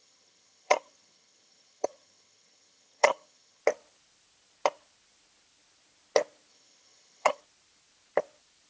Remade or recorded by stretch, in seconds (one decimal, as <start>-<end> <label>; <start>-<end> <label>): 0.0-3.6 remade; 3.6-6.5 recorded; 6.5-7.4 remade; 7.4-8.7 recorded